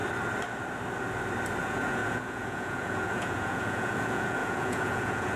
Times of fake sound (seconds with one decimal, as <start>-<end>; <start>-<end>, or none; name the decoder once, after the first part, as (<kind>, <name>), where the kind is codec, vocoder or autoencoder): 1.6-5.4 (vocoder, Vocos)